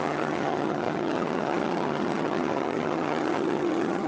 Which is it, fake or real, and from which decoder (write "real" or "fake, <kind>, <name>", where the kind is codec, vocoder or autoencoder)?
fake, vocoder, HiFi-GAN